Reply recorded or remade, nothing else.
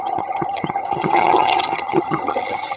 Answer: remade